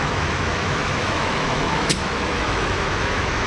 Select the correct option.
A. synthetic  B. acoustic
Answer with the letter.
A